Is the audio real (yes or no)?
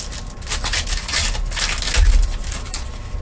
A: yes